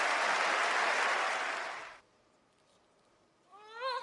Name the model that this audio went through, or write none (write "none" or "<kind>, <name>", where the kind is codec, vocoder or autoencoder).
none